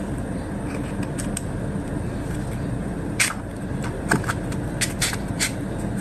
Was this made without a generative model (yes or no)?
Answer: yes